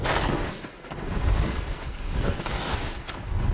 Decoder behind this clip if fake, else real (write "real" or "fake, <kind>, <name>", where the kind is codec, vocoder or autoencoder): fake, codec, SNAC